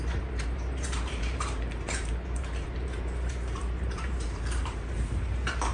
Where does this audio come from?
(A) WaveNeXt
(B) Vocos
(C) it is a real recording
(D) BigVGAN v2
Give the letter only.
D